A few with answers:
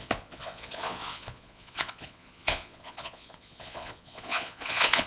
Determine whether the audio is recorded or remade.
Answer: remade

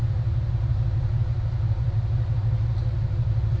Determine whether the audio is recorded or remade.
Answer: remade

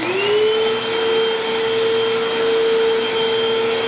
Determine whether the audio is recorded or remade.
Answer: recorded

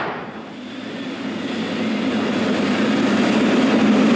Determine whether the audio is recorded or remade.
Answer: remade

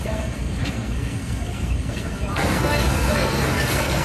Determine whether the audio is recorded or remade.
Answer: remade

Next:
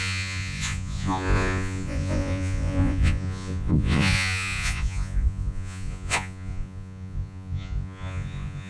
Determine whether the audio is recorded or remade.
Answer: remade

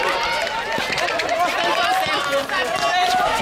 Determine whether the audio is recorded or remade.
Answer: recorded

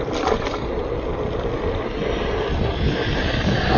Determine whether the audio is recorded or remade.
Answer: recorded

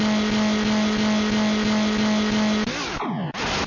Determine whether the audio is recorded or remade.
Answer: recorded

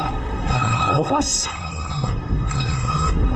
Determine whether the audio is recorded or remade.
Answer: remade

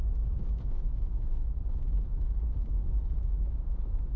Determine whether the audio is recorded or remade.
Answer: remade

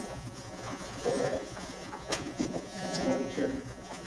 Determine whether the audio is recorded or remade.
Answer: remade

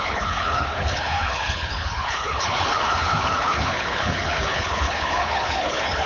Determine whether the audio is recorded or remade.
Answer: remade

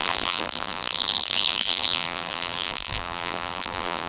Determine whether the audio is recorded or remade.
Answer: remade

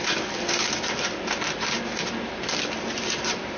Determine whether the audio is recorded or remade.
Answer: recorded